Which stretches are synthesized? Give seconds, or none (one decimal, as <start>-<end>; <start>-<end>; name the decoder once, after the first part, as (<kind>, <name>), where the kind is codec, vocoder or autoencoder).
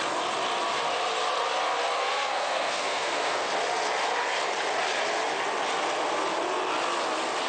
2.0-3.5 (codec, SNAC)